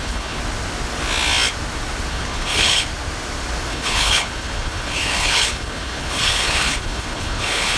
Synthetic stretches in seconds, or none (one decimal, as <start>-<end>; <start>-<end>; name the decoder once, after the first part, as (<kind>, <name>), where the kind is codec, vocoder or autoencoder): 0.0-0.4 (codec, HILCodec); 2.1-2.9; 3.7-7.8